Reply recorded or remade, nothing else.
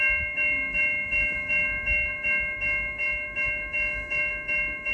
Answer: remade